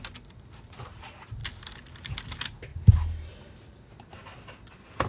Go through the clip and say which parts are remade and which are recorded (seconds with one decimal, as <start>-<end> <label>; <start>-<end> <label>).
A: 0.0-2.7 recorded; 2.7-3.3 remade; 3.3-5.1 recorded